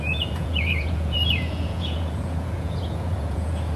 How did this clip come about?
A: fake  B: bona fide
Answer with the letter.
A